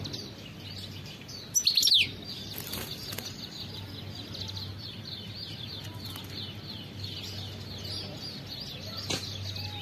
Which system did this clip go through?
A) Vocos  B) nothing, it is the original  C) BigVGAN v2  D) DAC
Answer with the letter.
B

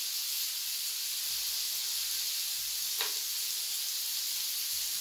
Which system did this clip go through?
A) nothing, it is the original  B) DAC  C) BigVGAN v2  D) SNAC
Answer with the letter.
A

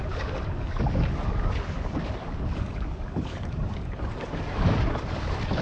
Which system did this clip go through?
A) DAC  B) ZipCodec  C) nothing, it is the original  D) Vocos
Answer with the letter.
A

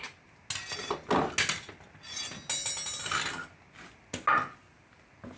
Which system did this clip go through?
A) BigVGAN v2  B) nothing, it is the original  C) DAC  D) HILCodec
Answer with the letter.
B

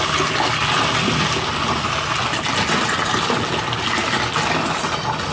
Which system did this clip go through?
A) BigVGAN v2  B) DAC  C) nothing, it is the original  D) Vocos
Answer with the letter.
C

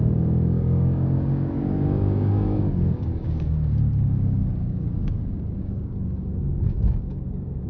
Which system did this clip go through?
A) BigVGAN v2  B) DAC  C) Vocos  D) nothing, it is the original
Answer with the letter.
B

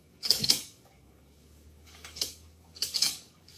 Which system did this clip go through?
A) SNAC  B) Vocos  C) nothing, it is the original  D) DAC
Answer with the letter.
D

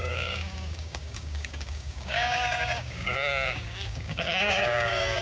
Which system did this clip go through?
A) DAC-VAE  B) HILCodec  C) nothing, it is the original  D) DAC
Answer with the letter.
D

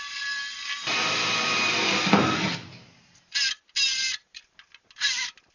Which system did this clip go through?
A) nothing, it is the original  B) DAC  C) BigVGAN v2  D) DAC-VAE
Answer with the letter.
A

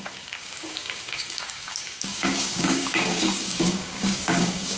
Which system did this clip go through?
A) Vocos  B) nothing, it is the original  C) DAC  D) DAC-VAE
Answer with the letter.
C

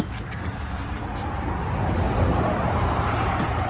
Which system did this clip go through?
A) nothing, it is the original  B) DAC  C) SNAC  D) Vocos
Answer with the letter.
A